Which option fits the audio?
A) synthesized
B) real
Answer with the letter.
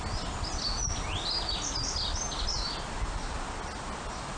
B